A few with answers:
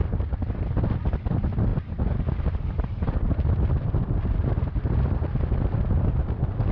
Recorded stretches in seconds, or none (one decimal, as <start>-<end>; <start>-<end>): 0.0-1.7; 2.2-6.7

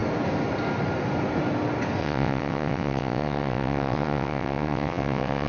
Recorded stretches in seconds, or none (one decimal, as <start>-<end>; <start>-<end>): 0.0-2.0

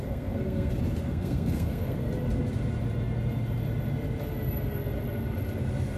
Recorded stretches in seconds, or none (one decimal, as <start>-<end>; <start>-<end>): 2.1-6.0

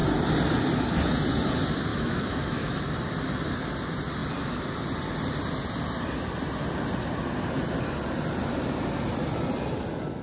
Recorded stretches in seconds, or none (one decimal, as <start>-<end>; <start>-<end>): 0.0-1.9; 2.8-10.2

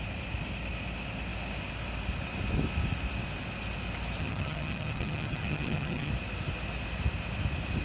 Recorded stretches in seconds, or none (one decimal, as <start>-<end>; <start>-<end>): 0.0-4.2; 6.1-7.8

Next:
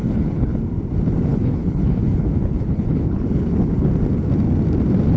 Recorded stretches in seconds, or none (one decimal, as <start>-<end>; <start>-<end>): 0.6-1.3; 3.9-5.2

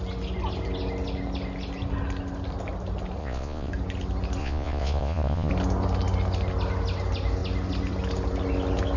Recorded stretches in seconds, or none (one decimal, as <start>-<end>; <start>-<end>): 0.0-3.2; 3.7-4.4; 5.5-9.0